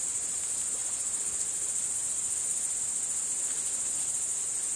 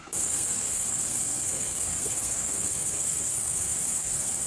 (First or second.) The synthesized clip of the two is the second